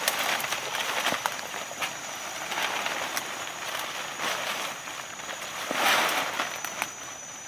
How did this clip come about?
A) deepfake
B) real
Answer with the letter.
B